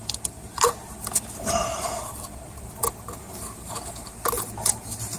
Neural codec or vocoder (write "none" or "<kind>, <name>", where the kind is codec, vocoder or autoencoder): vocoder, BigVGAN v2